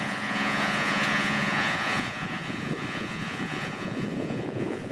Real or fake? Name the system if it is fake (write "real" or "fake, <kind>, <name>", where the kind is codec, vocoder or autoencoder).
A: fake, vocoder, Vocos